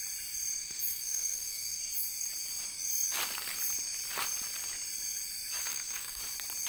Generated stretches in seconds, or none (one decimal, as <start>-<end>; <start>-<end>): 0.6-1.8; 5.6-6.2